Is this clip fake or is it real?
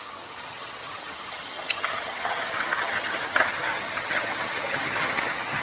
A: fake